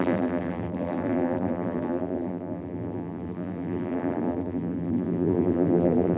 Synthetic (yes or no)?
yes